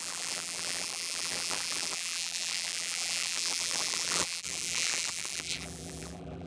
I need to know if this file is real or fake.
fake